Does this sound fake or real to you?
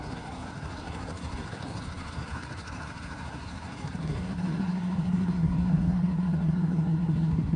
fake